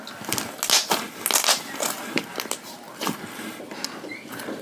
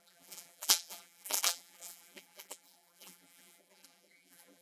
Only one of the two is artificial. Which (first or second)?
second